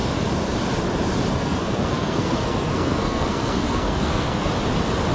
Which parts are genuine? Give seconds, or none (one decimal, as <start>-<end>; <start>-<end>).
0.0-1.4; 4.5-5.1